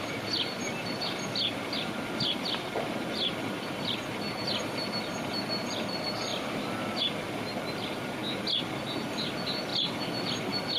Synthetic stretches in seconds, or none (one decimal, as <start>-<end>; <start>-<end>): none